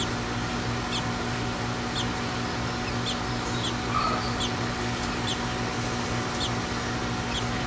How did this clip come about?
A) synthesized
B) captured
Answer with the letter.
B